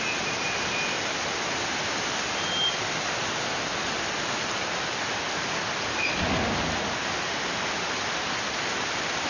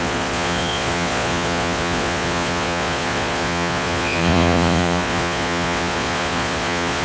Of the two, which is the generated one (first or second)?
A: second